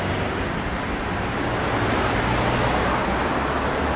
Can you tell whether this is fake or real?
real